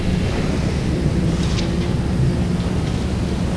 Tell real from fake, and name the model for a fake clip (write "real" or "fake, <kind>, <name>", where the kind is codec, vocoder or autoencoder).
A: real